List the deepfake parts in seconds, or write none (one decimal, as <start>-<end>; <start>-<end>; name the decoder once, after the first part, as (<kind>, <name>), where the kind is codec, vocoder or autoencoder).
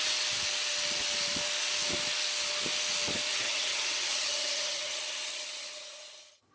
3.3-6.5 (vocoder, HiFi-GAN)